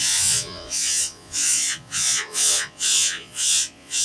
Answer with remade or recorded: remade